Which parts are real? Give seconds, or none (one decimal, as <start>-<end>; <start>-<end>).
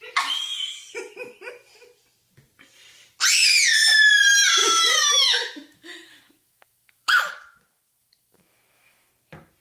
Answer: 0.0-4.6; 9.1-9.6